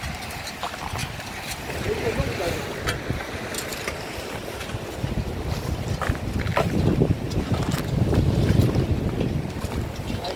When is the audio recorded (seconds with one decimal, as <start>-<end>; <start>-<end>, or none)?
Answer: 0.0-1.0; 2.8-3.7; 4.7-6.5; 7.9-10.4

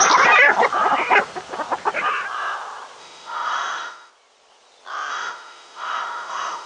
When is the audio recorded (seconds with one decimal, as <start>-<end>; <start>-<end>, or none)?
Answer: 0.0-3.0; 4.1-5.1

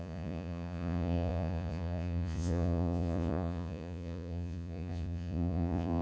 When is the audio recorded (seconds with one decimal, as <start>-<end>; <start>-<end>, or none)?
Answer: none